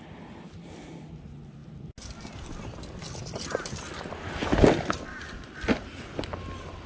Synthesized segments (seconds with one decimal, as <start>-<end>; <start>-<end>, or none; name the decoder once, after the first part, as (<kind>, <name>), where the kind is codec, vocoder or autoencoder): none